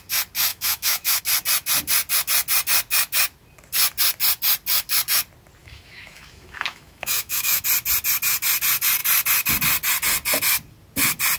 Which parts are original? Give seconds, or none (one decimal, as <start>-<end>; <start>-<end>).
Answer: 0.0-0.5; 1.2-5.6; 7.6-11.4